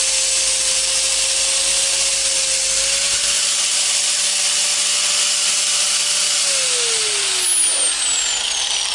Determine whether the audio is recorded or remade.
recorded